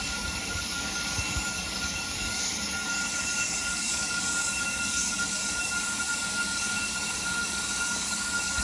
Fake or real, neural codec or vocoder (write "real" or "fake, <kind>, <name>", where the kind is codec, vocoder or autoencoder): fake, codec, DAC